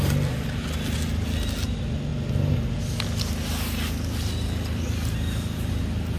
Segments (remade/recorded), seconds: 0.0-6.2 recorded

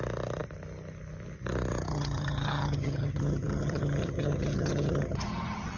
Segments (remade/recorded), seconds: 0.0-1.9 recorded; 1.9-5.8 remade

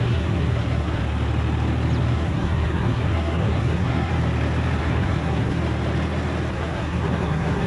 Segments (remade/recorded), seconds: 0.0-1.0 remade; 1.0-2.0 recorded; 2.0-4.1 remade; 4.1-4.8 recorded; 4.8-5.6 remade; 5.6-6.5 recorded; 6.5-7.7 remade

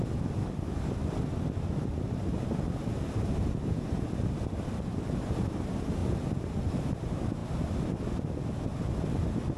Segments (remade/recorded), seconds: 0.0-0.4 recorded; 0.4-0.9 remade; 0.9-9.6 recorded

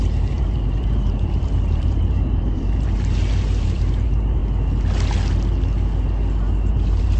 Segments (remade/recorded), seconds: 0.0-4.4 remade; 4.4-6.7 recorded; 6.7-7.2 remade

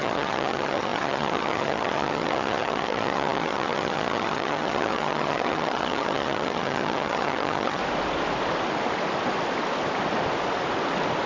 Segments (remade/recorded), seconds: 0.0-7.8 remade; 7.8-11.3 recorded

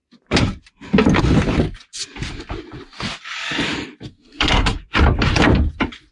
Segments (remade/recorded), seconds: 0.0-4.1 recorded; 4.1-4.8 remade; 4.8-6.1 recorded

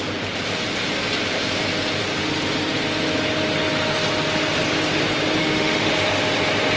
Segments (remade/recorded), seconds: 0.0-5.4 recorded; 5.4-5.9 remade; 5.9-6.8 recorded